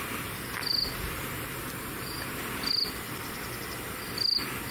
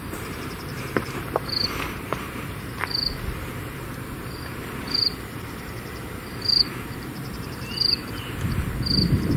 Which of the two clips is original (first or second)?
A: first